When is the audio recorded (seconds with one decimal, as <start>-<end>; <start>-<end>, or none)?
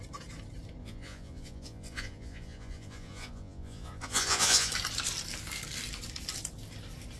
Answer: 0.0-0.8; 4.7-7.2